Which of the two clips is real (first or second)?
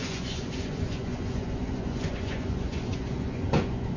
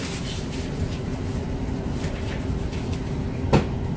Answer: second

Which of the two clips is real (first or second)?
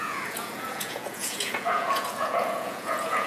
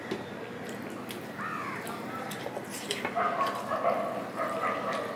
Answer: second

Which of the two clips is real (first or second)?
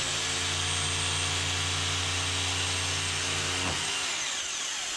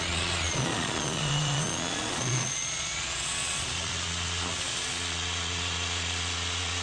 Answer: first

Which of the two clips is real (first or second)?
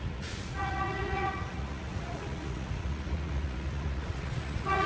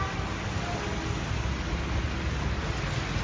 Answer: second